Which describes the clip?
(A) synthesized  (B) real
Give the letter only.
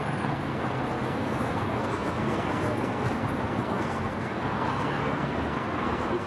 A